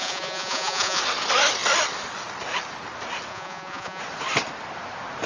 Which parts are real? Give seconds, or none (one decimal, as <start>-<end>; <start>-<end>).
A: 1.0-3.3; 4.0-5.3